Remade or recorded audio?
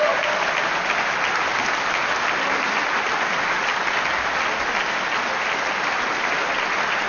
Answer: recorded